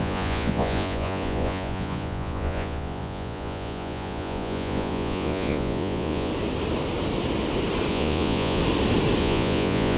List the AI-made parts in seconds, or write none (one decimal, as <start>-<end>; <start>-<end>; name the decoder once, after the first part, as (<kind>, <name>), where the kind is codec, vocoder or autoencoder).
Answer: 0.0-6.3 (vocoder, Vocos); 7.9-8.6; 9.2-10.0